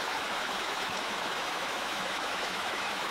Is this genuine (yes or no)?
no